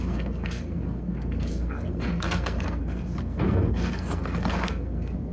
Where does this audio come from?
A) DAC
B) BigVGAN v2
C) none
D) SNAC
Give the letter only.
D